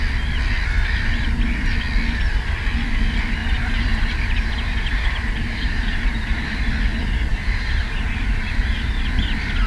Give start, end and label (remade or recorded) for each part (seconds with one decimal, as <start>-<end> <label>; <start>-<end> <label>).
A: 0.0-3.4 recorded; 3.4-6.7 remade; 6.7-7.3 recorded; 7.3-8.7 remade; 8.7-9.7 recorded